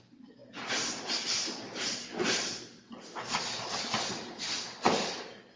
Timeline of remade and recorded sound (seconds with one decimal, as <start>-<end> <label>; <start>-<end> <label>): 0.0-5.6 recorded